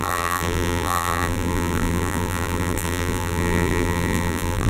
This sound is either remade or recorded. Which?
remade